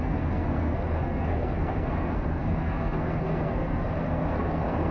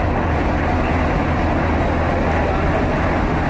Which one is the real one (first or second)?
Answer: second